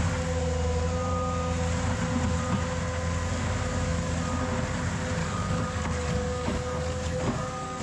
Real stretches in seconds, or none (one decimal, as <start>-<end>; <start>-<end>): 0.0-5.2